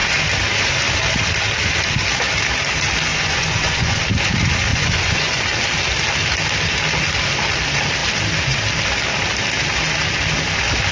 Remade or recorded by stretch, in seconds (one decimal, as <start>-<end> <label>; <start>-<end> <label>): 0.0-3.1 recorded; 3.1-4.0 remade; 4.0-4.7 recorded; 4.7-5.4 remade; 5.4-10.9 recorded